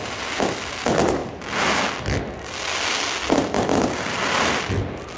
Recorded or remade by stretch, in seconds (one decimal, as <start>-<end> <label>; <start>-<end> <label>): 0.0-5.2 recorded

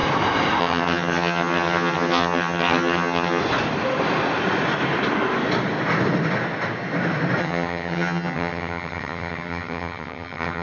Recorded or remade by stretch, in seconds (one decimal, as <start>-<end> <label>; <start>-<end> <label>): 0.0-0.6 recorded; 0.6-3.4 remade; 3.4-7.4 recorded; 7.4-10.6 remade

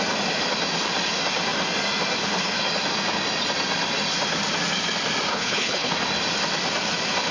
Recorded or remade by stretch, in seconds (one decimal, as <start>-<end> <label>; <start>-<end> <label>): 0.0-5.3 recorded; 5.3-5.9 remade; 5.9-7.3 recorded

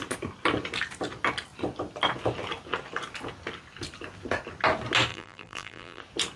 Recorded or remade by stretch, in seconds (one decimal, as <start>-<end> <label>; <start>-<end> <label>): 0.0-5.1 recorded; 5.1-6.0 remade; 6.0-6.4 recorded

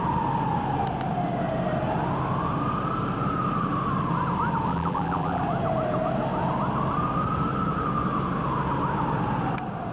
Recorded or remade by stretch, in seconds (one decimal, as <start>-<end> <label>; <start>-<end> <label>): 0.0-4.7 recorded; 4.7-5.4 remade; 5.4-9.9 recorded

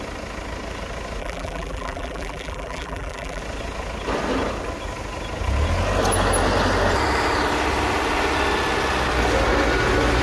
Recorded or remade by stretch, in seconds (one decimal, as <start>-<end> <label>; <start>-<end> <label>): 0.0-1.2 recorded; 1.2-3.4 remade; 3.4-10.2 recorded

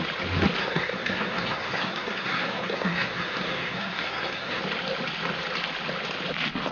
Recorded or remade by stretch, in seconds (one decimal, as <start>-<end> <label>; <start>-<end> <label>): 0.0-0.6 recorded; 0.6-4.6 remade; 4.6-6.7 recorded